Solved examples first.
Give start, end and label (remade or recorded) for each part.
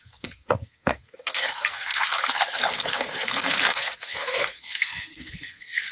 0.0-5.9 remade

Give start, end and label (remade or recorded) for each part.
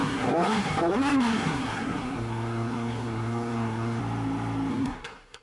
0.0-4.0 remade; 4.0-4.7 recorded; 4.7-5.4 remade